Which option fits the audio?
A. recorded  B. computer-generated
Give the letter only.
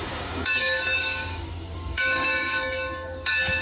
B